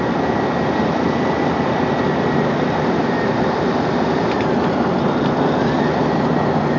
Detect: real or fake real